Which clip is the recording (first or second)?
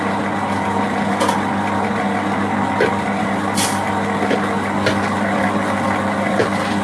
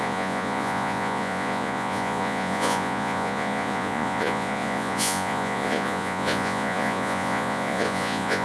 first